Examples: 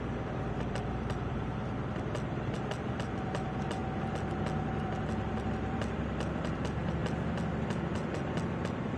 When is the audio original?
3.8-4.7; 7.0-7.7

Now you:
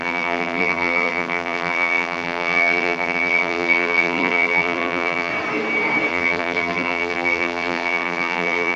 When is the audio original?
5.3-6.1

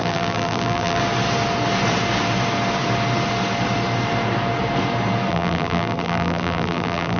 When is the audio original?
1.0-5.3

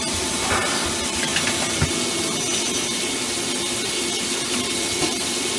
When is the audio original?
1.3-4.7

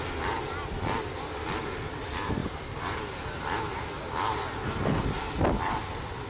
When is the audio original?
0.0-6.3

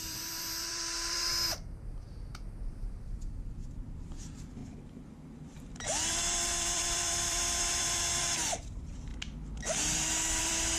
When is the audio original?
1.3-2.7; 9.1-10.4